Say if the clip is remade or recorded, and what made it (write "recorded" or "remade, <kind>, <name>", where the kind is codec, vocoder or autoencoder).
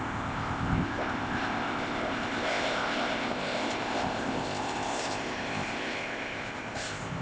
remade, codec, ZipCodec